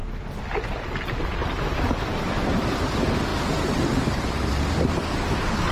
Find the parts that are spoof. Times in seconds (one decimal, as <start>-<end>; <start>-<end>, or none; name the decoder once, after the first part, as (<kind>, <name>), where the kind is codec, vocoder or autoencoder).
none